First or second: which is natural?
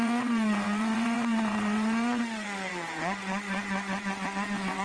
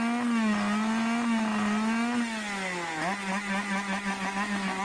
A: second